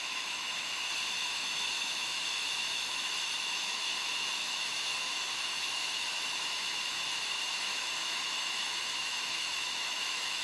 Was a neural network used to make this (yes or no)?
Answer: yes